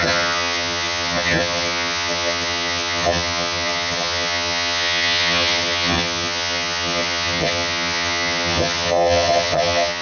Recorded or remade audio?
remade